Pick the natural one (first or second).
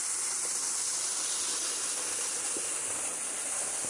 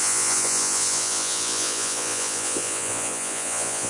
first